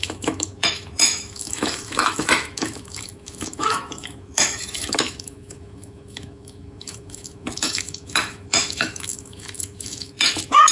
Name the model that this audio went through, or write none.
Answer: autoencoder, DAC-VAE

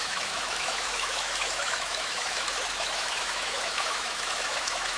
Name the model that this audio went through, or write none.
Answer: autoencoder, DAC-VAE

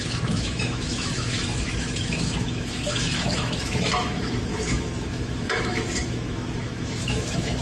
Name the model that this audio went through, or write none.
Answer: autoencoder, DAC-VAE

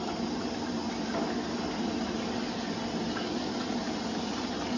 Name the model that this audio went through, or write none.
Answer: none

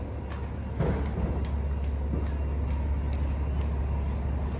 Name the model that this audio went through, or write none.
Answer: none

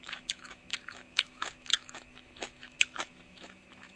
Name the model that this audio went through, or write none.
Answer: autoencoder, DAC-VAE